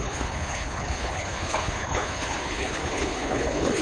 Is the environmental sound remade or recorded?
remade